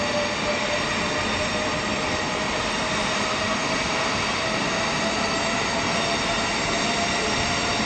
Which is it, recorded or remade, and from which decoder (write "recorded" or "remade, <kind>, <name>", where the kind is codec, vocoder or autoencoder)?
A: recorded